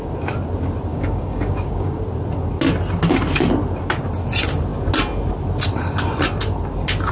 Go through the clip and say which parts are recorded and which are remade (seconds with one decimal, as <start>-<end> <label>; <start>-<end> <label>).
0.0-0.9 recorded; 0.9-2.0 remade; 2.0-7.1 recorded